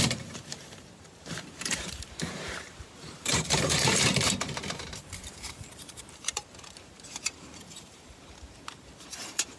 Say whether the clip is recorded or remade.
remade